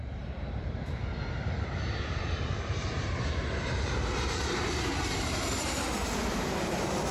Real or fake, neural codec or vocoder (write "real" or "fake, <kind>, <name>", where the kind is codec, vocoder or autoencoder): fake, vocoder, BigVGAN v2